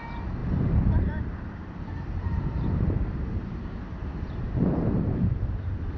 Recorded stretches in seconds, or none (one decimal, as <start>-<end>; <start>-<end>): none